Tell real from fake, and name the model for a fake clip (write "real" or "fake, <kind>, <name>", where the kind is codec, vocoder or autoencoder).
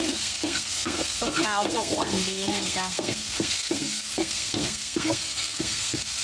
fake, codec, SNAC